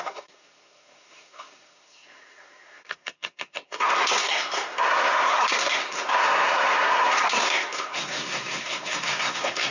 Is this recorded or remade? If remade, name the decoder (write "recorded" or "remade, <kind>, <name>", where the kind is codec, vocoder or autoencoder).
remade, codec, SNAC